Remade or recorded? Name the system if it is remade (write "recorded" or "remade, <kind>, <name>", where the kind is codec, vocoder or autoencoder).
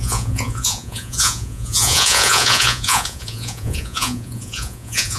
remade, vocoder, Vocos